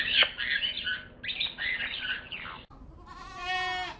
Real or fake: real